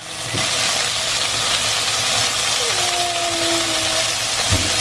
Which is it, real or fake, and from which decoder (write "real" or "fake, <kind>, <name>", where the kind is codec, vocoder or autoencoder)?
real